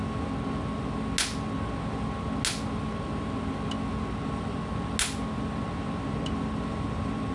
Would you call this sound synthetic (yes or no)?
no